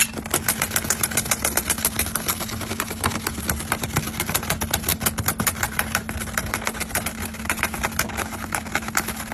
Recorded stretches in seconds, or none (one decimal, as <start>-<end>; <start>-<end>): 0.0-9.3